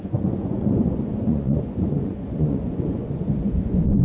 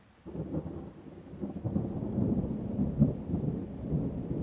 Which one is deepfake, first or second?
first